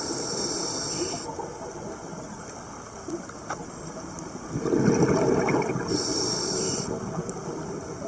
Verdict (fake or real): real